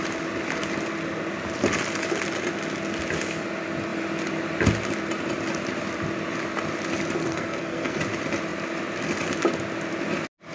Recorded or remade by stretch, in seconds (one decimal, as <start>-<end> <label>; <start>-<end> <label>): 0.0-7.2 recorded; 7.2-8.0 remade; 8.0-10.5 recorded